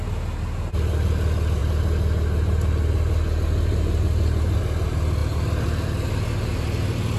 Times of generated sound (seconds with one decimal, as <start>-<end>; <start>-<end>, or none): 5.2-6.1

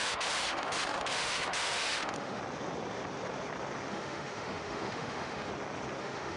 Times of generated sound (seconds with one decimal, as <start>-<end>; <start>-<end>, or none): 0.0-2.4; 3.9-5.5; 6.0-6.4

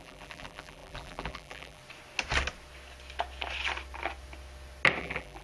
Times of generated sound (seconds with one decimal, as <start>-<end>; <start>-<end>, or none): 0.0-1.8; 5.0-5.4